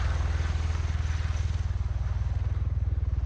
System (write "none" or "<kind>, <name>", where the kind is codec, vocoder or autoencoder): none